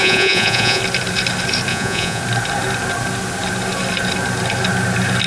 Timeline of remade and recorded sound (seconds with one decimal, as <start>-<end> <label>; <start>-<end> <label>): 0.0-0.8 remade; 0.8-1.7 recorded; 1.7-2.2 remade; 2.2-5.3 recorded